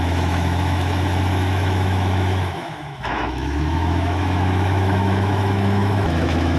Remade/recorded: remade